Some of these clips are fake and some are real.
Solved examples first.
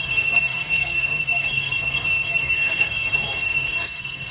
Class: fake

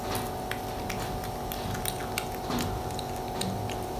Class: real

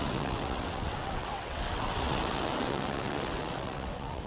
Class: fake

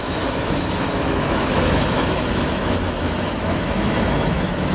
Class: fake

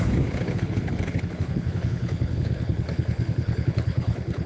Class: fake